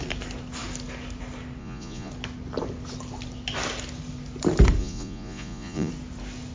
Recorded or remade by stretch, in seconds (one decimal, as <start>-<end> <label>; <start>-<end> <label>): 0.0-1.6 recorded; 1.6-2.1 remade; 2.1-4.8 recorded; 4.8-5.9 remade; 5.9-6.5 recorded